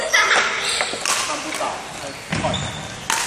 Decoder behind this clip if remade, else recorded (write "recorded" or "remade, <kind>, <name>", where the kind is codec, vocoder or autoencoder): recorded